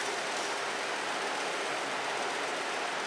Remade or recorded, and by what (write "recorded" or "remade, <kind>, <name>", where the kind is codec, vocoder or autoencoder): recorded